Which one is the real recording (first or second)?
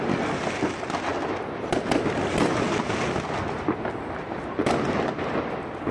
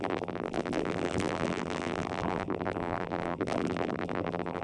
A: first